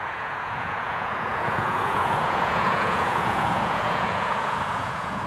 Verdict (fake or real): fake